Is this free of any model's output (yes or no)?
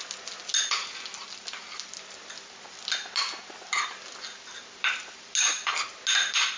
yes